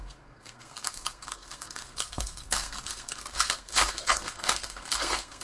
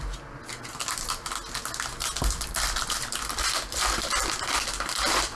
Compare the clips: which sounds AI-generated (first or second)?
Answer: first